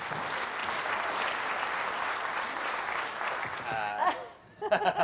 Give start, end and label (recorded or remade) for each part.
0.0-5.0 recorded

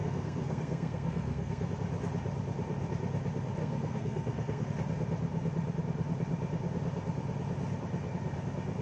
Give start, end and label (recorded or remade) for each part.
0.0-1.7 remade; 1.7-3.6 recorded; 3.6-4.7 remade; 4.7-8.8 recorded

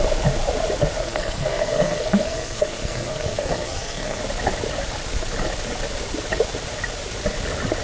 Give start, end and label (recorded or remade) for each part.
0.0-1.0 recorded; 1.0-4.2 remade; 4.2-7.8 recorded

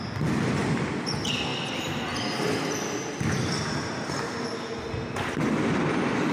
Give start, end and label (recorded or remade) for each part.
0.0-6.3 recorded

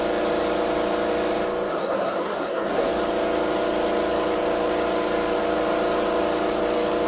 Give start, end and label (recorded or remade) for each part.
0.0-1.7 recorded; 1.7-2.9 remade; 2.9-7.1 recorded

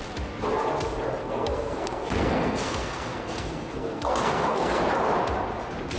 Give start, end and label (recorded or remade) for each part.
0.0-1.2 recorded; 1.2-4.8 remade; 4.8-6.0 recorded

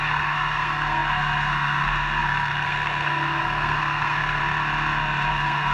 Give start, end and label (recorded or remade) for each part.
0.0-4.4 remade; 4.4-5.3 recorded; 5.3-5.7 remade

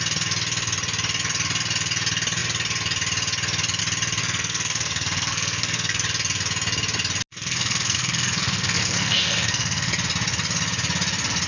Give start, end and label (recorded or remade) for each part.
0.0-4.2 recorded; 4.2-6.0 remade; 6.0-7.3 recorded; 7.3-9.9 remade; 9.9-11.5 recorded